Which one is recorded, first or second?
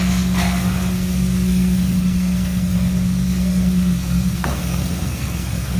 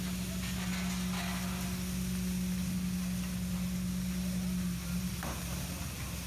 second